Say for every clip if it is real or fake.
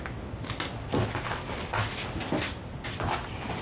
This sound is real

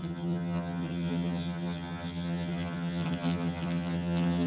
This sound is fake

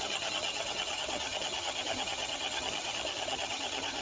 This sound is fake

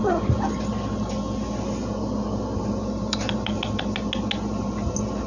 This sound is real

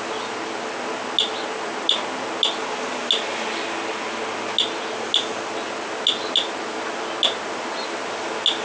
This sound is real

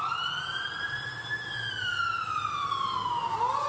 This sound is real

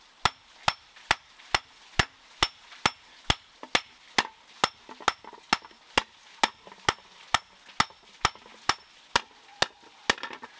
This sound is real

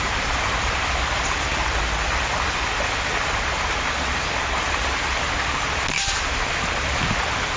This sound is real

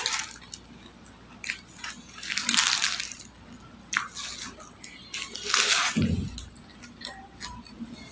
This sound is real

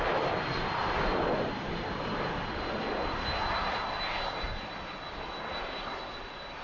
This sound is real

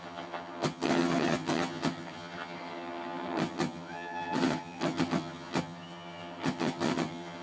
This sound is fake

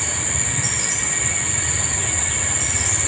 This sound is real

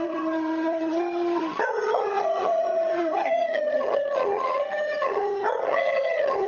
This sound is fake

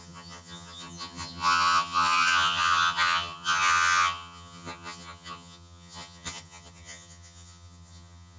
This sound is fake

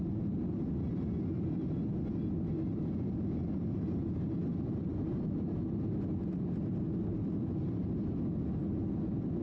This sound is real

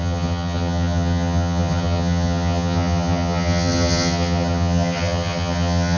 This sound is fake